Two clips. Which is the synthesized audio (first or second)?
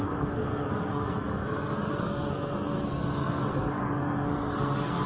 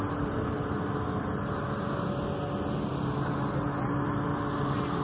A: first